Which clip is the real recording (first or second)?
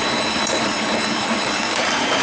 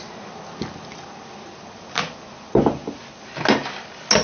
second